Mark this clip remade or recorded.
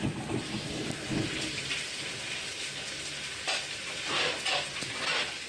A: recorded